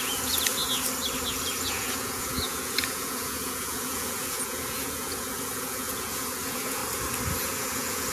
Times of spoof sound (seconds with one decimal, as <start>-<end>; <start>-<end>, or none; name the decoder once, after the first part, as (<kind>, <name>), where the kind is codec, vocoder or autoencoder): 0.0-0.6 (vocoder, Vocos); 1.3-6.8; 7.4-8.1